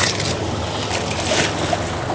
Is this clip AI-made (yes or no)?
no